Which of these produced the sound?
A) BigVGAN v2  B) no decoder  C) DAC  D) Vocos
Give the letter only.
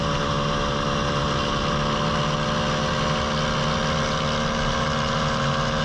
B